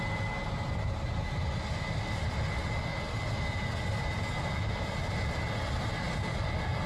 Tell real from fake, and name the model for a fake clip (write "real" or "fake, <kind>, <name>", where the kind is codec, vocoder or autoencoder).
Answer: real